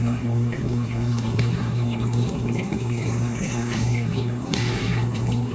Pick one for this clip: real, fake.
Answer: fake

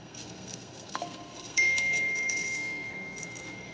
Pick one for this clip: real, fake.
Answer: fake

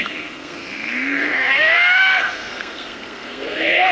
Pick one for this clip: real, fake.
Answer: fake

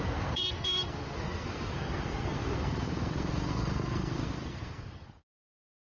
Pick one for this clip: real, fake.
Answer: fake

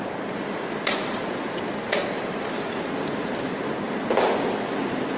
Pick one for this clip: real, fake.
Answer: real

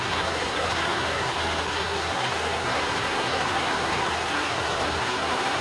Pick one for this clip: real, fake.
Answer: fake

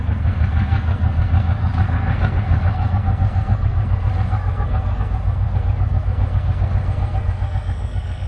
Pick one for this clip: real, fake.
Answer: fake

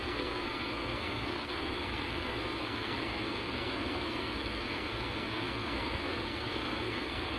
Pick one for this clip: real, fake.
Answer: fake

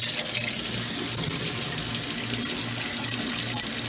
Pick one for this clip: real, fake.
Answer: real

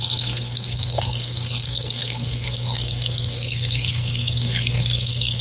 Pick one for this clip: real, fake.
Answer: fake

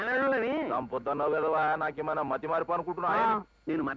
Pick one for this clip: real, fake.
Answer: real